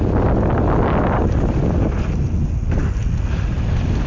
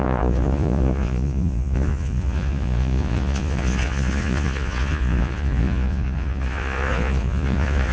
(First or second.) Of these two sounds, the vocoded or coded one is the second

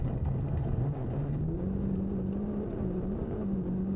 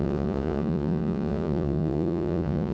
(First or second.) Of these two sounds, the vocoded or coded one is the second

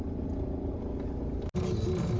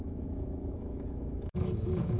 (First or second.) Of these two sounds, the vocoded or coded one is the second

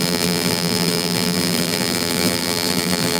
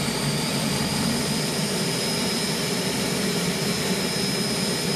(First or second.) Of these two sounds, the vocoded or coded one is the first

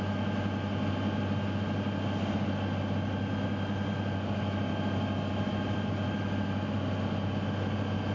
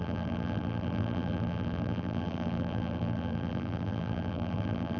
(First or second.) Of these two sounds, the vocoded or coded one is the second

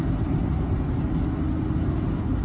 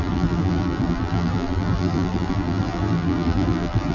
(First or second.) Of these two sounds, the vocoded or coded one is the second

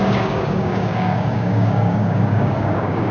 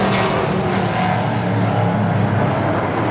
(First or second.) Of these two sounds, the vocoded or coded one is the first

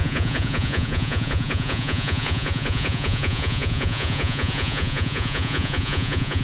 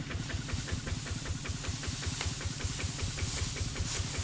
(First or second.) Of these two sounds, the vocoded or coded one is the first